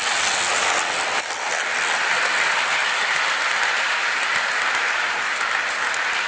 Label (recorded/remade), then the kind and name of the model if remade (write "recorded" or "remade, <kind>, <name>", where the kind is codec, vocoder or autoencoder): recorded